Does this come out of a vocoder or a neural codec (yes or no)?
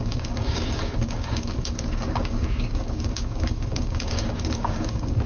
yes